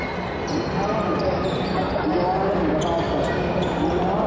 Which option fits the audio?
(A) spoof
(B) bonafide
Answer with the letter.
B